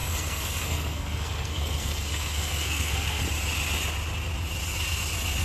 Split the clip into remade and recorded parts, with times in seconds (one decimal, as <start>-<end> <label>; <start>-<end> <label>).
0.0-3.2 remade; 3.2-5.4 recorded